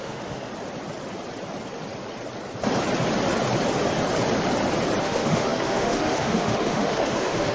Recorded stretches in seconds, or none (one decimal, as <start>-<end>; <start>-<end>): 0.5-5.0